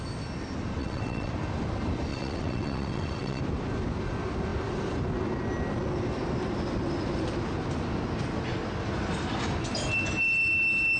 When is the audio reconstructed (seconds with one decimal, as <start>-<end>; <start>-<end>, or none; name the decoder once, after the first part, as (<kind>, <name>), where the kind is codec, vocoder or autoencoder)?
0.8-1.3 (vocoder, WaveNeXt); 2.1-3.4